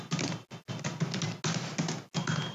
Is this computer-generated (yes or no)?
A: no